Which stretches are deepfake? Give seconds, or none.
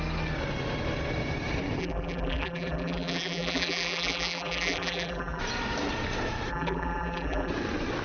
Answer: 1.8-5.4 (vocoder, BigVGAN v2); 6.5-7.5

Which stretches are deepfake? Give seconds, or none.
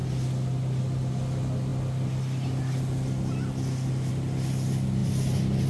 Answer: none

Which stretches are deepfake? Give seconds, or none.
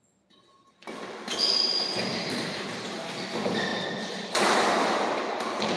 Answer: none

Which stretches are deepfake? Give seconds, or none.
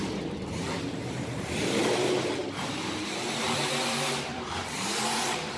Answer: 0.0-5.6 (vocoder, BigVGAN v2)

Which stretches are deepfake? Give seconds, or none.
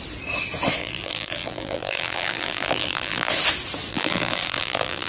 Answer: 0.8-3.3 (vocoder, BigVGAN v2); 3.9-5.1